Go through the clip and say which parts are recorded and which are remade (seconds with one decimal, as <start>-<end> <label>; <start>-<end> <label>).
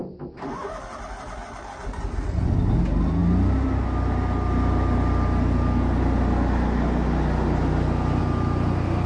0.0-9.1 recorded